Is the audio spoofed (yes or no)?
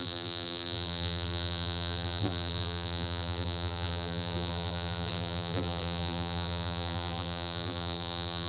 yes